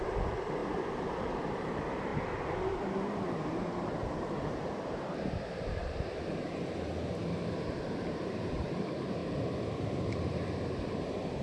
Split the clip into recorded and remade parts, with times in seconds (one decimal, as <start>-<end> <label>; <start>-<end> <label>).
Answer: 0.0-9.2 remade; 9.2-9.8 recorded; 9.8-11.4 remade